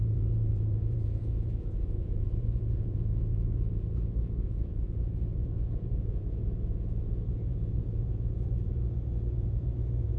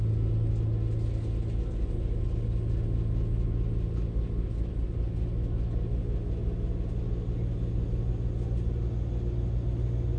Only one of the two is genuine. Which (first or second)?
second